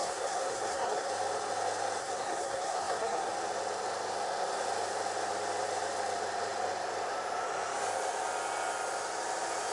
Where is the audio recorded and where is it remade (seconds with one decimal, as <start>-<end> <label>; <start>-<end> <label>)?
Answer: 0.0-1.1 remade; 1.1-2.0 recorded; 2.0-3.3 remade; 3.3-9.7 recorded